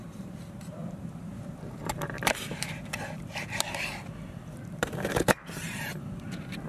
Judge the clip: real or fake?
fake